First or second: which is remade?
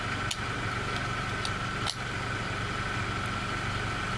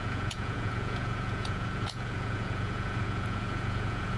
second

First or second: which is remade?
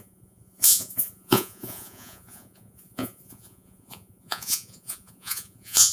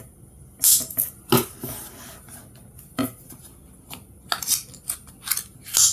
first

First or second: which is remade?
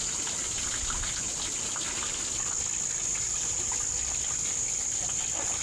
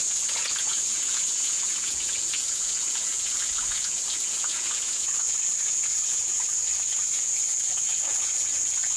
second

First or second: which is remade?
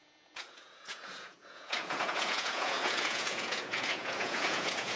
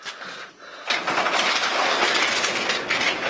first